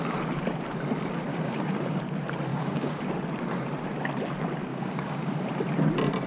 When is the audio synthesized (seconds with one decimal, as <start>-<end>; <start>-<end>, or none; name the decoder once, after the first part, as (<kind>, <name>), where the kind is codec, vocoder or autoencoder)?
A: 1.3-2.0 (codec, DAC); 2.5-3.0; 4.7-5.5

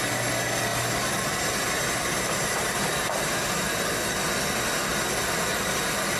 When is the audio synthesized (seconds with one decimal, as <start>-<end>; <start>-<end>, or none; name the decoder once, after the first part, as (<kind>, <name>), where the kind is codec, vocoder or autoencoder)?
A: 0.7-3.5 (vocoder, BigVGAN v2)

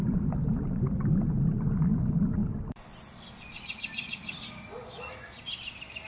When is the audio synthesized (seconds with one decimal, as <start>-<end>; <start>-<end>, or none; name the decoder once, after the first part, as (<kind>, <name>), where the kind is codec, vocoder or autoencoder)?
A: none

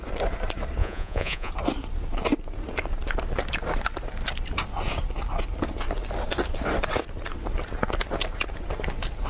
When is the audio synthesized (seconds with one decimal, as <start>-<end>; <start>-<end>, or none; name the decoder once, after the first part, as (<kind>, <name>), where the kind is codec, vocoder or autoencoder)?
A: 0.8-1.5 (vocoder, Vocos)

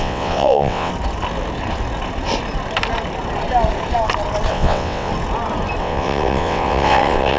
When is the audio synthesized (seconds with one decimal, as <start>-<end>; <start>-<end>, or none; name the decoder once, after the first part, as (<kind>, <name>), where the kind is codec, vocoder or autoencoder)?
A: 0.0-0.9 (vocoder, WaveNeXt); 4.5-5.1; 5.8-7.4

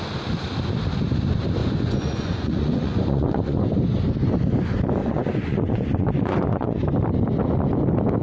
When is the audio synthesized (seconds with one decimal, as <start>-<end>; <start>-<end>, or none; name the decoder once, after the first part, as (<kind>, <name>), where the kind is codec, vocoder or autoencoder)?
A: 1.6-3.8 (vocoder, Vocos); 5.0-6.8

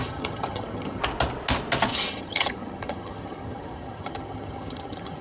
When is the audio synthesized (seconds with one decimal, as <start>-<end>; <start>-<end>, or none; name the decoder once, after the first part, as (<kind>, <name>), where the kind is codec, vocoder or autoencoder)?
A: 0.0-1.0 (vocoder, HiFi-GAN); 1.9-5.2

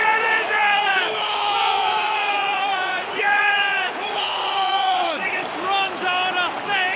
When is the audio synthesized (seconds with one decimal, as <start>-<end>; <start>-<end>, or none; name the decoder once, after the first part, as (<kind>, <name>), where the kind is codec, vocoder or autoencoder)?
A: 0.0-1.0 (vocoder, Vocos); 1.6-5.3